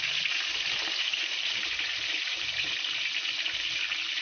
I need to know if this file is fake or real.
real